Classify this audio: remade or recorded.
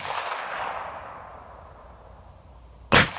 recorded